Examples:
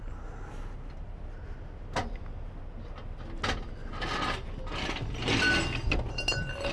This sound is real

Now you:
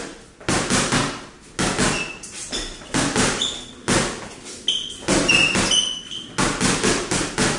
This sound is real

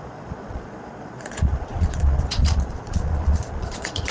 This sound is fake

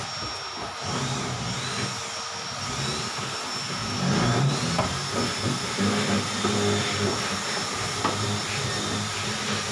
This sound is real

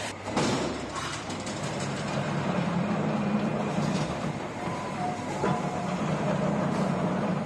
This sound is fake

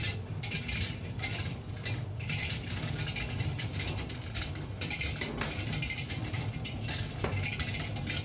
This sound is fake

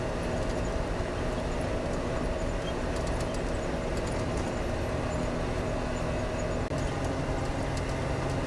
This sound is real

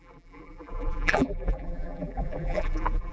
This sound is fake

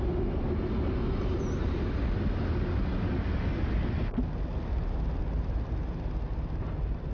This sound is real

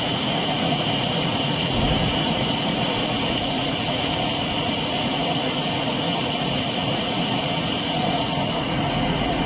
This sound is fake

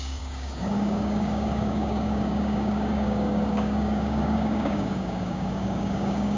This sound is fake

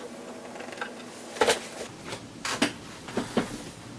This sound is real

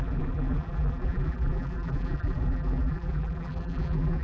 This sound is fake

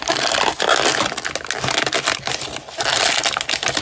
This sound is real